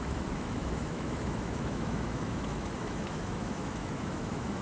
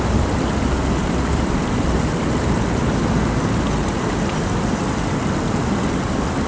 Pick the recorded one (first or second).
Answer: second